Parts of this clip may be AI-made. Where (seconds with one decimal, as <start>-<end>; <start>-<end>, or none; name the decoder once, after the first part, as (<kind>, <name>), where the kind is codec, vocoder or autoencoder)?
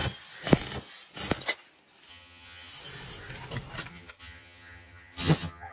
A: 2.1-2.7 (vocoder, HiFi-GAN); 3.9-5.7